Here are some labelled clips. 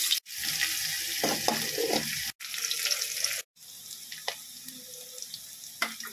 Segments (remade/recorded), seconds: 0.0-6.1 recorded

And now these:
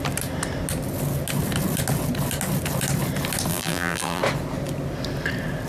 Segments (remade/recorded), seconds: 0.0-3.5 recorded; 3.5-4.2 remade; 4.2-5.7 recorded

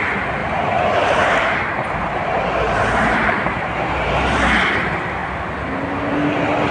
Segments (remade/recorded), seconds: 0.0-0.4 recorded; 0.4-4.4 remade; 4.4-6.7 recorded